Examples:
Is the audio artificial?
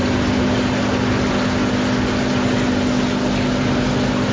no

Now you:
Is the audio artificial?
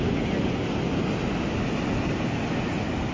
no